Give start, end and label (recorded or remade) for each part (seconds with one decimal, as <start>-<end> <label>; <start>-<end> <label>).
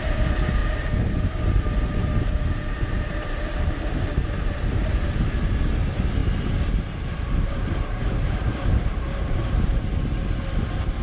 0.0-0.6 recorded; 0.6-4.6 remade; 4.6-6.2 recorded; 6.2-10.0 remade; 10.0-11.0 recorded